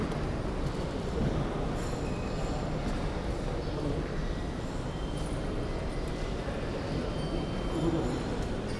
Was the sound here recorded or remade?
recorded